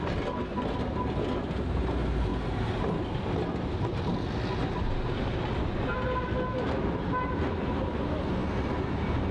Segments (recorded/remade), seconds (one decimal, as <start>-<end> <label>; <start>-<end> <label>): 0.0-9.3 recorded